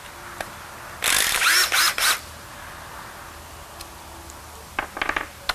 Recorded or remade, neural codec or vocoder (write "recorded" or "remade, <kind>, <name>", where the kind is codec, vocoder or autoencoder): recorded